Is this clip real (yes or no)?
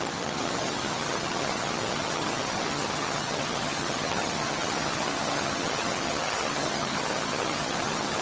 no